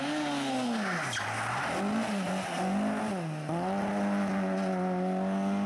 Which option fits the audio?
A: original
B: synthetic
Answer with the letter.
A